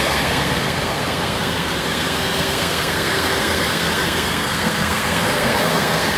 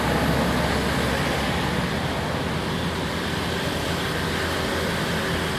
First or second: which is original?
second